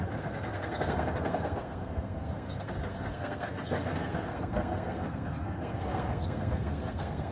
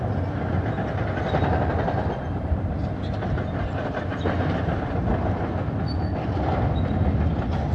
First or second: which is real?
second